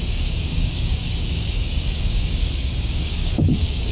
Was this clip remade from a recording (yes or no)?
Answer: yes